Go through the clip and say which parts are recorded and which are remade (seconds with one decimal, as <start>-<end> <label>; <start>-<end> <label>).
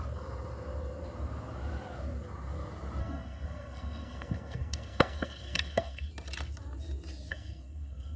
0.0-3.0 recorded; 3.0-6.1 remade; 6.1-7.3 recorded; 7.3-8.2 remade